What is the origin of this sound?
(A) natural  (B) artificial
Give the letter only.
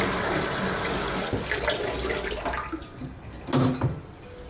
A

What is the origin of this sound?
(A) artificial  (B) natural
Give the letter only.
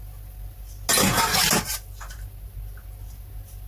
B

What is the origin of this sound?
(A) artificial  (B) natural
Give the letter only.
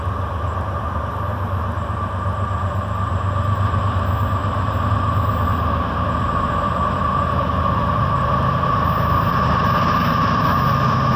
A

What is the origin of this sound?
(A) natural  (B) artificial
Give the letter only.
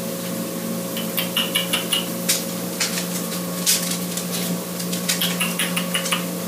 A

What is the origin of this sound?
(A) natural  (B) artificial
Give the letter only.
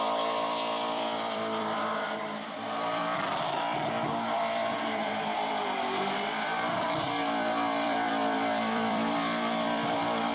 B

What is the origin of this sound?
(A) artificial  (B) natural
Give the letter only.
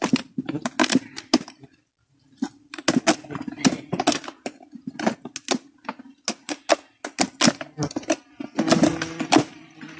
B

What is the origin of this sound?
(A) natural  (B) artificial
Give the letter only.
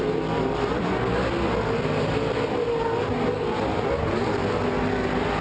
A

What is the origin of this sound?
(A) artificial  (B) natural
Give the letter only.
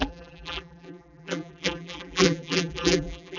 A